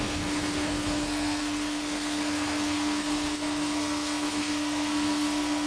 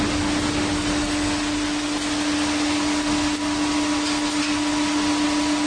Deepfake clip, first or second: first